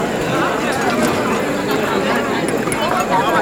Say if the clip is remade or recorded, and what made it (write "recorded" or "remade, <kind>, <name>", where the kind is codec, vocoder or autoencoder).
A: recorded